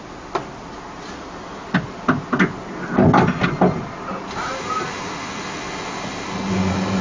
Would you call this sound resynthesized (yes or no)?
no